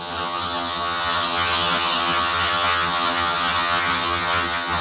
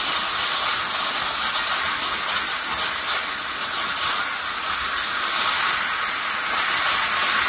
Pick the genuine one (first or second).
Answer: second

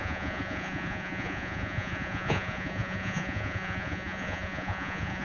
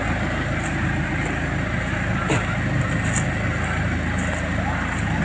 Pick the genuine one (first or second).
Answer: second